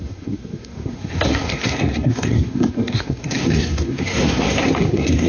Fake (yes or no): yes